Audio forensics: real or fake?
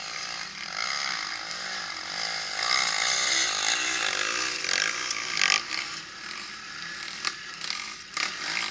real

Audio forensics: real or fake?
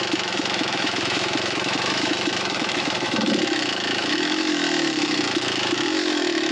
fake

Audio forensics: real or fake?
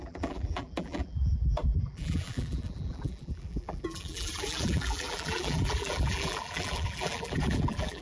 fake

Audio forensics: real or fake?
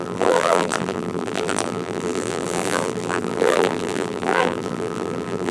fake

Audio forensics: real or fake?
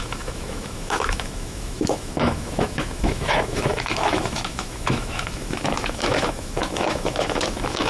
fake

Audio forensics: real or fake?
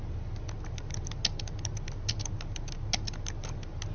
real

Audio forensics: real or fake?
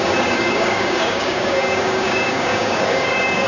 fake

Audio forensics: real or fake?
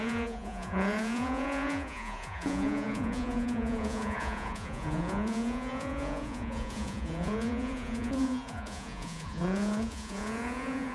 fake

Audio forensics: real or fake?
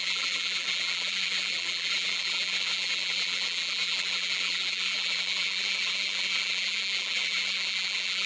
fake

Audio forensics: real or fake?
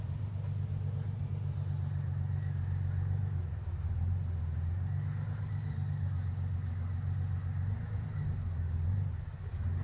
real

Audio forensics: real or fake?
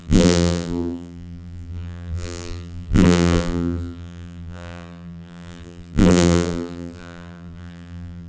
fake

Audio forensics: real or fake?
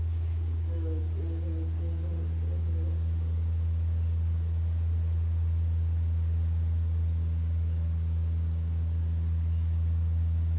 real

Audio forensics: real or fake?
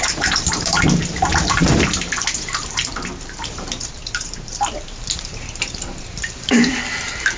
fake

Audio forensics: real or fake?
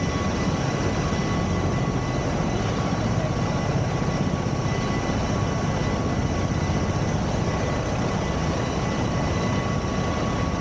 real